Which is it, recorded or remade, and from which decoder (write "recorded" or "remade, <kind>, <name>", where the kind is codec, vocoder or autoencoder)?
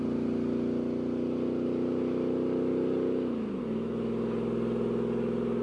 recorded